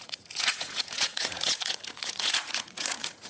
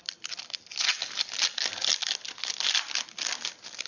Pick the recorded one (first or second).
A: second